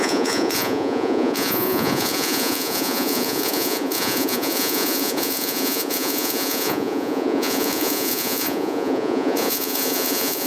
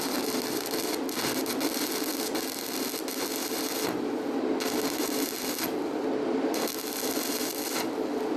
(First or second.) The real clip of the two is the second